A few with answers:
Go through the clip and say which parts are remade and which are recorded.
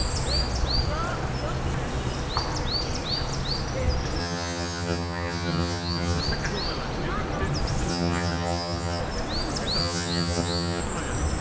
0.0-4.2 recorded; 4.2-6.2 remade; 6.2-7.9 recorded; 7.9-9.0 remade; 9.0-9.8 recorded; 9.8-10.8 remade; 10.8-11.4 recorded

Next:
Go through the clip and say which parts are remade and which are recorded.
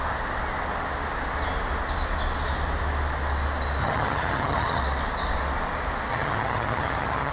0.0-3.8 recorded; 3.8-4.8 remade; 4.8-6.1 recorded; 6.1-7.3 remade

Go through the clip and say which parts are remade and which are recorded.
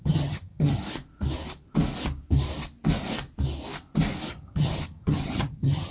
0.0-0.8 remade; 0.8-4.3 recorded; 4.3-5.9 remade